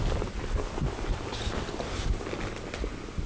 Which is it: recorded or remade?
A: recorded